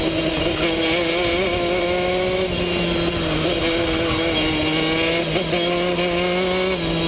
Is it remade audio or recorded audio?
recorded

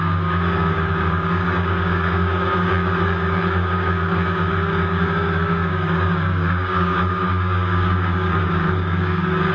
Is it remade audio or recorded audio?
remade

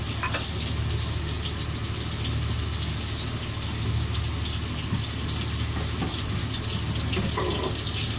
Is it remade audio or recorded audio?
recorded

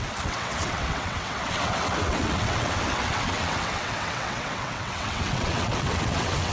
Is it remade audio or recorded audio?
remade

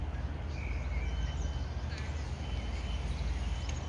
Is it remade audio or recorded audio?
recorded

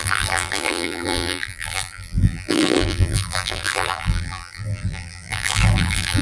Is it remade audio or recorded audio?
remade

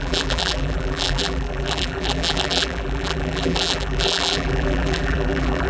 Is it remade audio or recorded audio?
remade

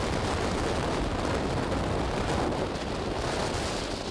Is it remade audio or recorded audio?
recorded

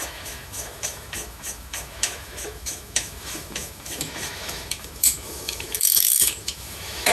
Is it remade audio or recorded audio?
remade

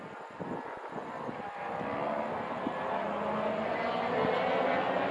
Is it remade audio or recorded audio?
recorded